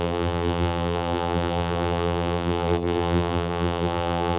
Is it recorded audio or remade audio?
remade